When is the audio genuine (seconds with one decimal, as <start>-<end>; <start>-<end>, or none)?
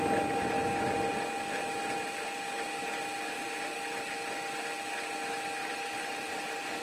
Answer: 0.0-5.6